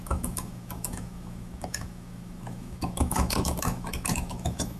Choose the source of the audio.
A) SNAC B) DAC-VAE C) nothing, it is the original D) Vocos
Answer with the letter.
B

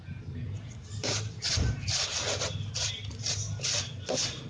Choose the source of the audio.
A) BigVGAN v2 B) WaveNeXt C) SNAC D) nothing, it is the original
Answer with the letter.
D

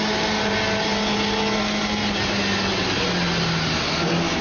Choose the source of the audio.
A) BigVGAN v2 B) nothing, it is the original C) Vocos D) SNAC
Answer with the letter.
B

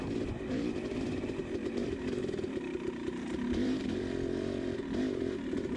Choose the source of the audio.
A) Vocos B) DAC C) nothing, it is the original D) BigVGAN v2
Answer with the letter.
D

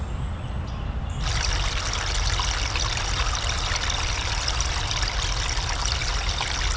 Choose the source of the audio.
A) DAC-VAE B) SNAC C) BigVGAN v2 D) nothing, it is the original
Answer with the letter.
D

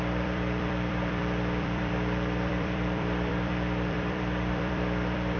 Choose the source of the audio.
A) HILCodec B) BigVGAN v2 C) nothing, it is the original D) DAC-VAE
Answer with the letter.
B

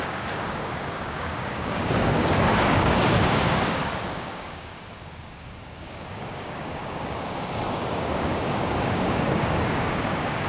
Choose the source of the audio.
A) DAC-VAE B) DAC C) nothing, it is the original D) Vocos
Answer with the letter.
B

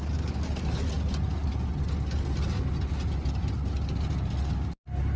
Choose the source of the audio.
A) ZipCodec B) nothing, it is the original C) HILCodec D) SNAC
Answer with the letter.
B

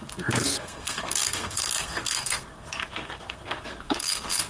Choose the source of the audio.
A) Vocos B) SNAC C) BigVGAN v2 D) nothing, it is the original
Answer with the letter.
B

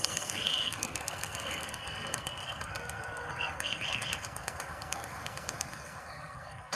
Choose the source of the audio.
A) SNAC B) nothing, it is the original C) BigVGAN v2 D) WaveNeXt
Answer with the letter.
A